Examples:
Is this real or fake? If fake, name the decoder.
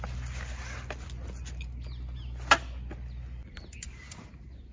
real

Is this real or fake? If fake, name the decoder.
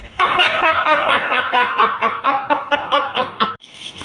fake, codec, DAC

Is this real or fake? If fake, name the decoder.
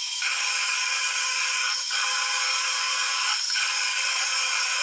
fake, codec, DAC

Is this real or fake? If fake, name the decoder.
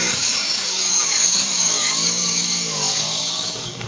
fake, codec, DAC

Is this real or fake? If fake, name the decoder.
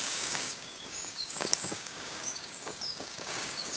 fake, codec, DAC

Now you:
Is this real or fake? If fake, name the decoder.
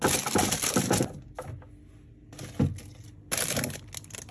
real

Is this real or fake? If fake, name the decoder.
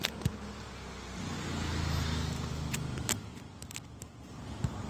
real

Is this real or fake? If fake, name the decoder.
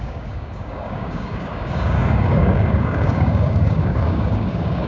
fake, codec, DAC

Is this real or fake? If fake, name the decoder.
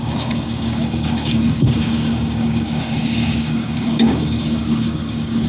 fake, codec, DAC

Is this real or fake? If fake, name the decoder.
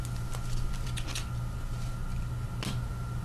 real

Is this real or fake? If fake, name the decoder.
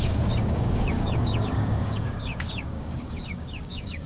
fake, codec, DAC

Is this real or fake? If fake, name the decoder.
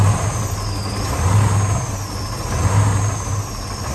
real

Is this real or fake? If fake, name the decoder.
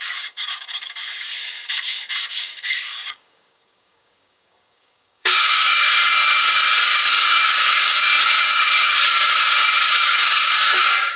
fake, codec, DAC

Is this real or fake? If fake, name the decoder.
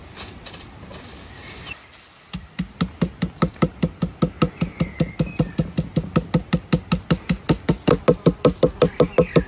real